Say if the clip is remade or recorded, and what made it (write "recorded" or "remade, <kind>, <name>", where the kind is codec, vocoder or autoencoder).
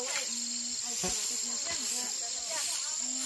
recorded